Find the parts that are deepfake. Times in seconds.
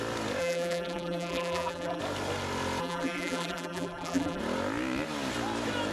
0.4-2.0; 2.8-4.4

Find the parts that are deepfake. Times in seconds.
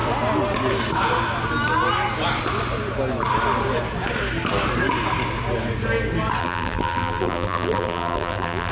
6.4-8.7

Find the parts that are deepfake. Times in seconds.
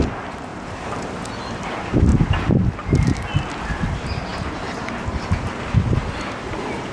0.5-1.2; 4.3-5.0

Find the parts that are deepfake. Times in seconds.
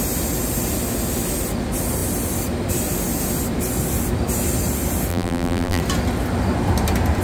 5.1-5.8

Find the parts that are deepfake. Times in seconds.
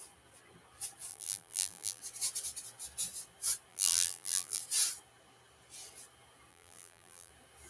1.1-2.0; 3.7-4.6; 6.5-7.3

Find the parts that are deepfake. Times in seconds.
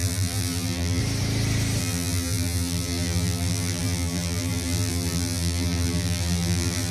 0.0-1.0; 1.8-6.9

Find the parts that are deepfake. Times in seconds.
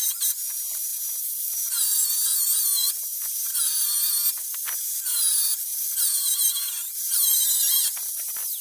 0.0-8.6